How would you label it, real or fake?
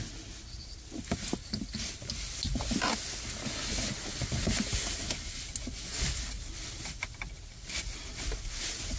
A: real